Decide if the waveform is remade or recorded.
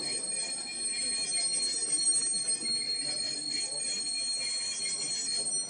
recorded